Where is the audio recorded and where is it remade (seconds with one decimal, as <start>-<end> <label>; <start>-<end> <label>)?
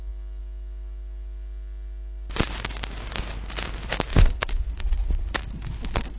0.0-4.1 recorded; 4.1-5.3 remade; 5.3-6.2 recorded